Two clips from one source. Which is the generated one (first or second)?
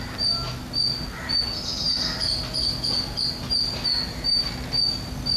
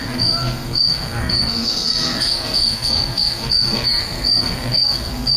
second